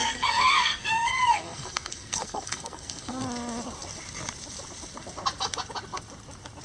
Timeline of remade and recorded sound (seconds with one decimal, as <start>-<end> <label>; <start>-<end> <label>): 0.0-3.2 remade; 3.2-6.6 recorded